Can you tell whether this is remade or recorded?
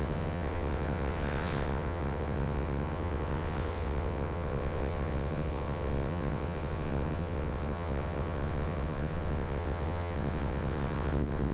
remade